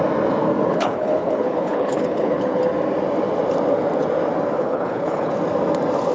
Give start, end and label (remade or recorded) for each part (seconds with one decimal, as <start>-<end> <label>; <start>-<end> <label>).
0.0-0.7 recorded; 0.7-2.6 remade; 2.6-4.6 recorded; 4.6-5.3 remade; 5.3-6.1 recorded